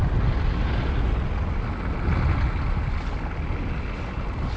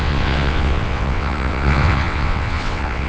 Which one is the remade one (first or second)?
second